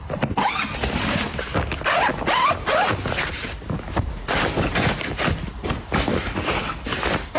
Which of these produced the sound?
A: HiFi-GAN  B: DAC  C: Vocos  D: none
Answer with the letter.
D